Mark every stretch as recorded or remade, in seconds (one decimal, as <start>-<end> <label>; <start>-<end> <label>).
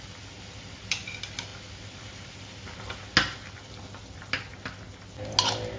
0.0-5.8 recorded